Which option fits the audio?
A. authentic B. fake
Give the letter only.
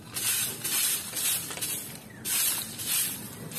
A